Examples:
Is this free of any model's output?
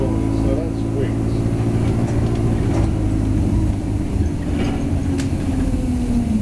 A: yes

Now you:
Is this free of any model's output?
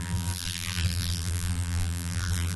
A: no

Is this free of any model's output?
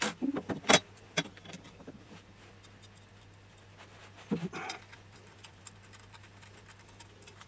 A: no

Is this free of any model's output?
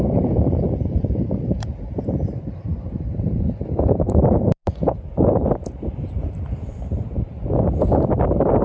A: no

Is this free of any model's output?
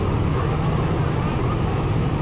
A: yes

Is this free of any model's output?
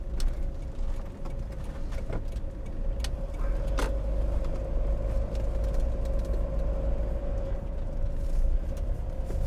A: yes